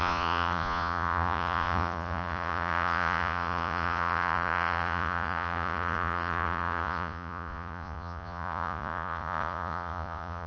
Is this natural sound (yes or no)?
no